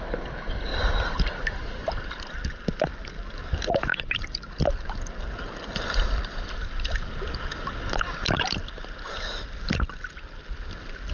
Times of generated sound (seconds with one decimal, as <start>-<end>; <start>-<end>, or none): 0.7-2.2; 3.9-4.5